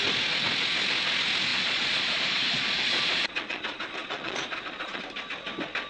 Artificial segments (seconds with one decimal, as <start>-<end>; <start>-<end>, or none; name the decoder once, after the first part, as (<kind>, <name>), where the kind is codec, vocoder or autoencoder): 1.5-5.0 (vocoder, Vocos)